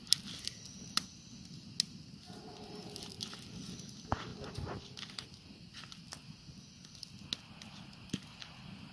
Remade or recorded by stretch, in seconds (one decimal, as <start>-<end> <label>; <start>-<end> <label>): 0.0-8.9 recorded